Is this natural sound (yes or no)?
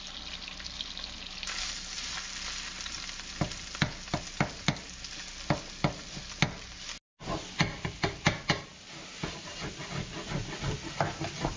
yes